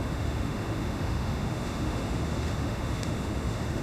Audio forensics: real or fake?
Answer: fake